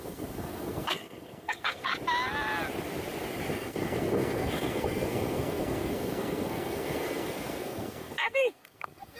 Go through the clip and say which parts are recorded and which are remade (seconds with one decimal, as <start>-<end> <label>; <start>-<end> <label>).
0.0-1.9 remade; 1.9-3.5 recorded; 3.5-9.2 remade